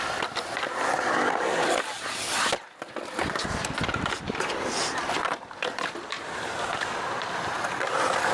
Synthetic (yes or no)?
yes